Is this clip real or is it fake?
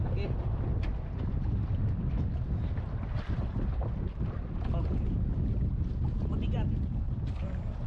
real